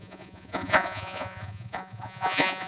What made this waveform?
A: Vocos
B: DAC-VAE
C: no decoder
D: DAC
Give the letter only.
A